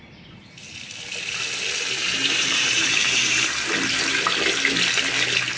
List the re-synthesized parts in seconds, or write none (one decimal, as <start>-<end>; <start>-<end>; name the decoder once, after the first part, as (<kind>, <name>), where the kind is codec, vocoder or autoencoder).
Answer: 2.0-3.7 (vocoder, BigVGAN v2)